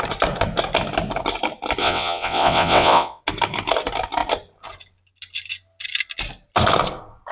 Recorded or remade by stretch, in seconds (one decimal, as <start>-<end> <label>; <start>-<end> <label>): 0.0-1.8 recorded; 1.8-3.2 remade; 3.2-7.3 recorded